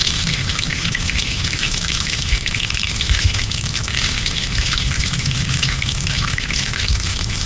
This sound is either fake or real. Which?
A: fake